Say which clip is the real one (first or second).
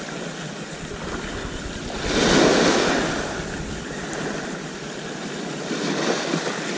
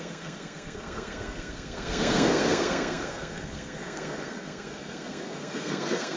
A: first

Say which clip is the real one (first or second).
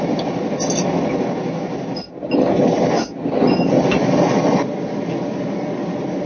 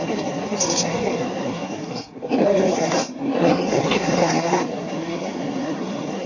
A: first